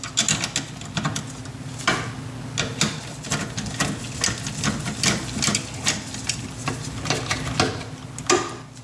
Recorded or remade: recorded